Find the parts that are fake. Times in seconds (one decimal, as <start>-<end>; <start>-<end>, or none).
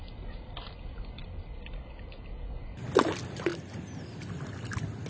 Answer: none